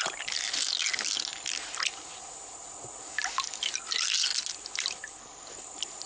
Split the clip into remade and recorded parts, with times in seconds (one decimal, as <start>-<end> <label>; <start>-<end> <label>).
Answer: 0.0-6.1 recorded

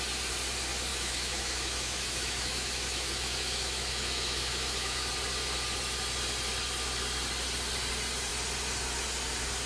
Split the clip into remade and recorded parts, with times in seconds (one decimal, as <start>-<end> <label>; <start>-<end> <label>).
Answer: 0.0-0.9 recorded; 0.9-5.1 remade; 5.1-9.7 recorded